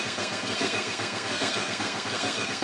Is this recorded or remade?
remade